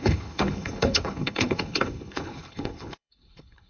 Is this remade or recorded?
remade